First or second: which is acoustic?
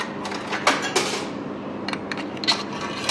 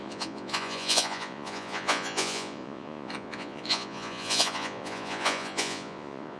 first